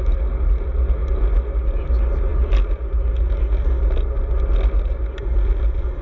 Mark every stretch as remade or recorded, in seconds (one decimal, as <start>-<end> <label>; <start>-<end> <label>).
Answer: 0.0-6.0 recorded

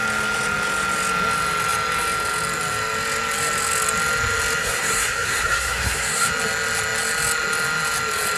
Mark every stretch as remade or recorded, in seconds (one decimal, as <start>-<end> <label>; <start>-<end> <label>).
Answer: 0.0-4.6 recorded; 4.6-6.3 remade; 6.3-8.4 recorded

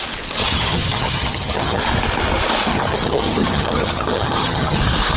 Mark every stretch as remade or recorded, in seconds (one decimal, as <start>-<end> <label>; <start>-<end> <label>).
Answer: 0.0-0.4 recorded; 0.4-1.8 remade; 1.8-2.7 recorded; 2.7-4.8 remade; 4.8-5.2 recorded